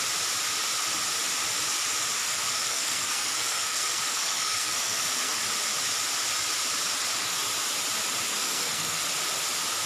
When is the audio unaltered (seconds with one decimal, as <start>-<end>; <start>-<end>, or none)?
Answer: 0.0-2.2; 5.4-8.3; 9.0-9.9